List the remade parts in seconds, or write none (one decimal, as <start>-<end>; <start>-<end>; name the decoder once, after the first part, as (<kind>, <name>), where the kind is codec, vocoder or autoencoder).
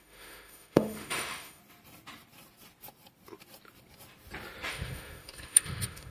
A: 0.0-1.6 (autoencoder, DAC-VAE); 4.7-6.1